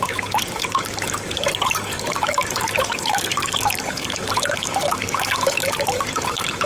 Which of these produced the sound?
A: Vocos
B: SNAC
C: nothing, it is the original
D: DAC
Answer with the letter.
D